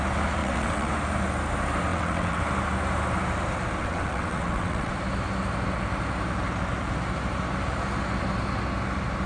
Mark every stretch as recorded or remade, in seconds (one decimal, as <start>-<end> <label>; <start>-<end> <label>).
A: 0.0-0.4 recorded; 0.4-0.9 remade; 0.9-1.9 recorded; 1.9-2.4 remade; 2.4-3.8 recorded; 3.8-4.9 remade; 4.9-9.3 recorded